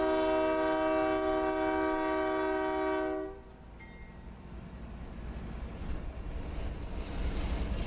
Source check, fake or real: real